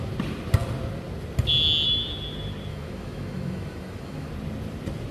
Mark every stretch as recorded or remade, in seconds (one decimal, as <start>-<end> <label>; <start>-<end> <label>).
0.0-2.7 recorded; 2.7-4.3 remade; 4.3-5.1 recorded